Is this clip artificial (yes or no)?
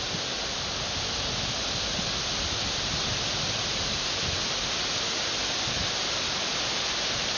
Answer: no